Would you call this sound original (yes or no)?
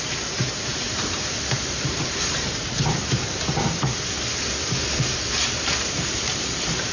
no